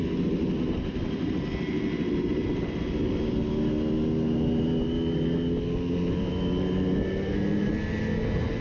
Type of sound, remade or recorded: recorded